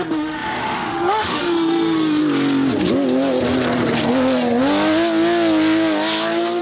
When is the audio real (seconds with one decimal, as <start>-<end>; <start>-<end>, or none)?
2.2-6.6